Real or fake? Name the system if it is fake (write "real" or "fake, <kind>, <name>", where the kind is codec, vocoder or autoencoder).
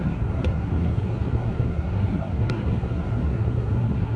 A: fake, codec, SNAC